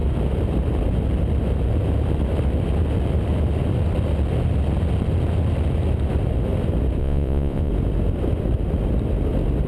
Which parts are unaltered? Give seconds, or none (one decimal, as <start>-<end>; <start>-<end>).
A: 0.0-7.0; 7.7-9.7